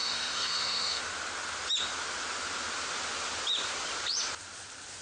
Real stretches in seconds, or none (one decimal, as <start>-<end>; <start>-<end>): 1.0-5.0